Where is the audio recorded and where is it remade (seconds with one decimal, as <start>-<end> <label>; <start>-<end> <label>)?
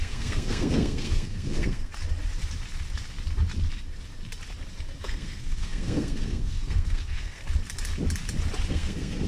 0.0-1.9 remade; 1.9-5.0 recorded; 5.0-7.4 remade; 7.4-8.7 recorded; 8.7-9.3 remade